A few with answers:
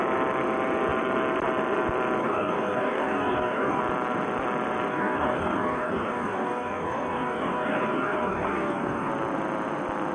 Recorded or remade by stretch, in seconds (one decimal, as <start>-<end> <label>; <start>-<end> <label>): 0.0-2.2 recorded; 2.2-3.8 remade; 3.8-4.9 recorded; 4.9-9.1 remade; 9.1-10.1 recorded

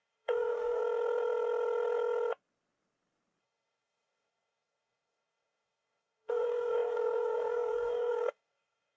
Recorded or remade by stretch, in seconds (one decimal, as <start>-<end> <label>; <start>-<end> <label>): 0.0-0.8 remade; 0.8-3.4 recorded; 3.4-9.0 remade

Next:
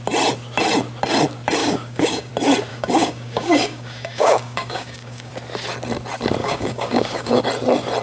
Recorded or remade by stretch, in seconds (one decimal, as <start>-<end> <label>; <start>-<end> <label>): 0.0-1.6 recorded; 1.6-2.3 remade; 2.3-2.7 recorded; 2.7-5.3 remade; 5.3-6.4 recorded; 6.4-7.4 remade; 7.4-8.0 recorded

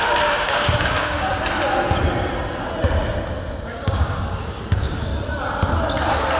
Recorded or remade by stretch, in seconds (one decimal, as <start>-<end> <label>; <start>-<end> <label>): 0.0-1.3 remade; 1.3-3.7 recorded; 3.7-5.1 remade; 5.1-6.4 recorded

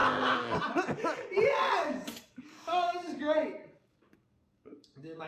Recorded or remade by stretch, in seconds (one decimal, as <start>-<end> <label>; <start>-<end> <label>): 0.0-1.8 recorded; 1.8-5.3 remade